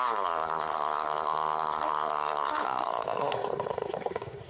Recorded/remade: remade